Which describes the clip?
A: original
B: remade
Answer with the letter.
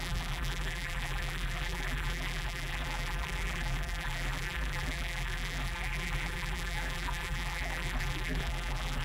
B